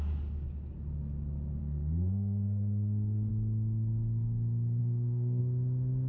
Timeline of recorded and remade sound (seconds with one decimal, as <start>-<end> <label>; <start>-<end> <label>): 0.0-1.6 recorded; 1.6-3.3 remade; 3.3-4.8 recorded; 4.8-5.4 remade; 5.4-6.1 recorded